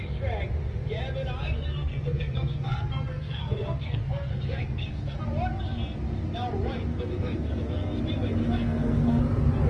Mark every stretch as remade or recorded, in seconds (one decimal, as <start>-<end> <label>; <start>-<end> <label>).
0.0-1.8 recorded; 1.8-5.2 remade; 5.2-6.9 recorded; 6.9-8.0 remade; 8.0-8.4 recorded; 8.4-9.2 remade; 9.2-9.7 recorded